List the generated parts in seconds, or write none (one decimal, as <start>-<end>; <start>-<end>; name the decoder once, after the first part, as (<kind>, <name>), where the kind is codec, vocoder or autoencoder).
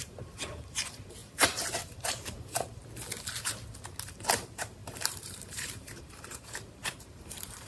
0.0-2.8 (vocoder, BigVGAN v2); 4.1-7.7